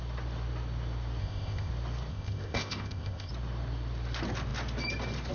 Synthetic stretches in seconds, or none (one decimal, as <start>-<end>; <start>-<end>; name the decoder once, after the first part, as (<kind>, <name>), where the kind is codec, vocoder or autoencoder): 1.2-1.7 (codec, ZipCodec); 2.1-3.3